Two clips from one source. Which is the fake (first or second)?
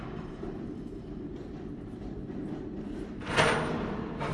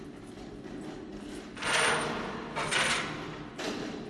first